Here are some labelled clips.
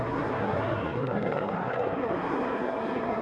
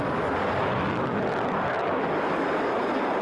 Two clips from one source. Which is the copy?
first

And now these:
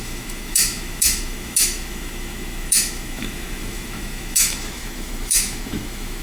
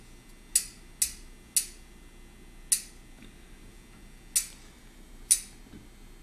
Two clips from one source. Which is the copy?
first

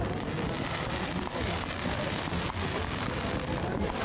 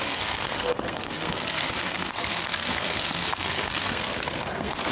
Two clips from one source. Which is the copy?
second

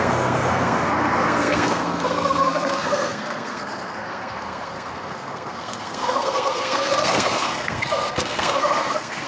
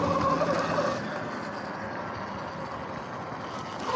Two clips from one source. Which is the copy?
first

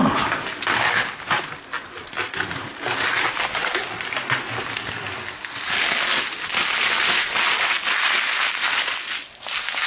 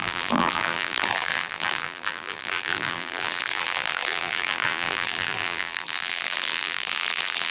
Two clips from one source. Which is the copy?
second